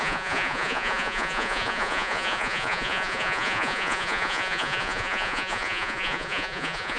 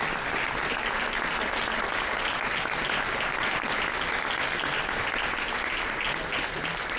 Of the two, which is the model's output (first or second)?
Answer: first